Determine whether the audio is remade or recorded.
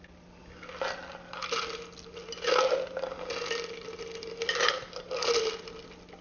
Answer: recorded